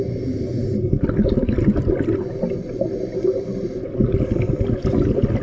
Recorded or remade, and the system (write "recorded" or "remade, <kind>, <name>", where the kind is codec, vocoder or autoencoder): recorded